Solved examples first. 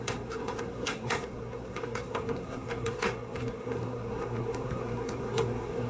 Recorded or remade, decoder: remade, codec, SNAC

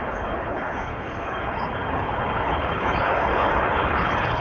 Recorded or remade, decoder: remade, codec, HILCodec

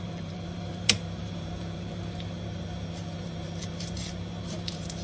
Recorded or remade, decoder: remade, vocoder, BigVGAN v2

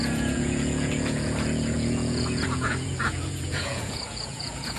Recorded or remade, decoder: remade, vocoder, Vocos